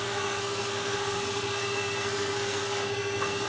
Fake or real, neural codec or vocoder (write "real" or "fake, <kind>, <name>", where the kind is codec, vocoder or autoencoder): fake, codec, SNAC